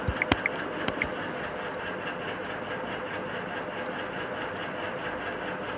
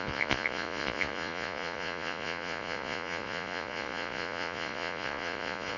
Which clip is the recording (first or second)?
first